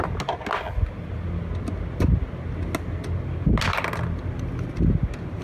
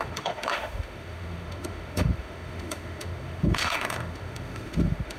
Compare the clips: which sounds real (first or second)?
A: first